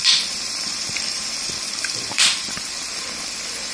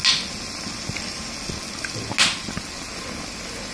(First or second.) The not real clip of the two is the first